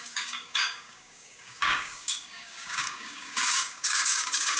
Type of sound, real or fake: fake